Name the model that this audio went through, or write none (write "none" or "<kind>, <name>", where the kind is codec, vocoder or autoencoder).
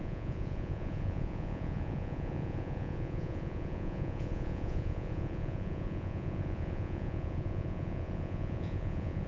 vocoder, Vocos